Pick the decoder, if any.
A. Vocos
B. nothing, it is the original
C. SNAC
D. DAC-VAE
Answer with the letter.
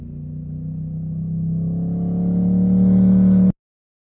B